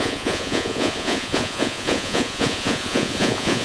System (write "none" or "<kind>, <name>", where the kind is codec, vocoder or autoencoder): vocoder, Vocos